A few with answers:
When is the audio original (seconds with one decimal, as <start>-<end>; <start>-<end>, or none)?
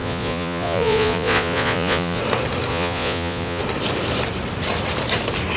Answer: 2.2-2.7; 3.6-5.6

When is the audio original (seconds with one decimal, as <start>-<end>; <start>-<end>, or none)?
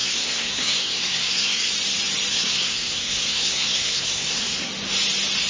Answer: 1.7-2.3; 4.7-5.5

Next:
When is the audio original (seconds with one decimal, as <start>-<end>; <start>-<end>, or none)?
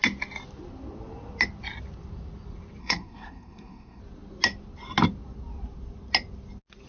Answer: 0.0-2.8; 4.0-6.9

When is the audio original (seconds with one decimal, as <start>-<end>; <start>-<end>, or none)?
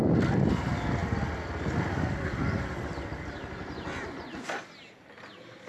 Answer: 0.0-5.7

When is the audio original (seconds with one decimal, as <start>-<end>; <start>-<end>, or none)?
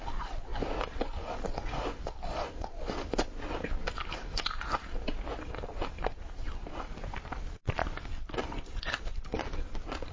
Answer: 0.0-10.1